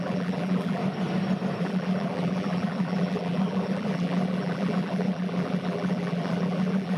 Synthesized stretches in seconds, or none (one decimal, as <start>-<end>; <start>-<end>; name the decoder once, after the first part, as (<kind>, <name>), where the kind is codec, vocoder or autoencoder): 0.0-0.8 (vocoder, BigVGAN v2); 1.6-7.0

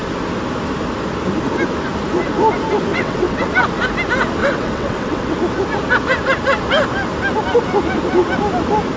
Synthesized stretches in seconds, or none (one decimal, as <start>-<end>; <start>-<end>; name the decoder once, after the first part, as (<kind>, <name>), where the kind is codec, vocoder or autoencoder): 2.9-3.5 (vocoder, WaveNeXt); 4.4-5.4

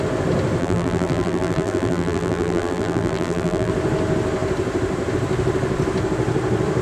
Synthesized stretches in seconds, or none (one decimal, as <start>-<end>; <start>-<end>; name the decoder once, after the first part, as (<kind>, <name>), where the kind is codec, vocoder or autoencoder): 0.6-3.7 (vocoder, BigVGAN v2)

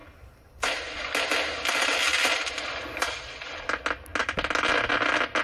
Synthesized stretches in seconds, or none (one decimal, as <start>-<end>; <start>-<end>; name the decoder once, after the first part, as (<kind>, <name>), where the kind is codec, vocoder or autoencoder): 0.0-0.8 (vocoder, BigVGAN v2)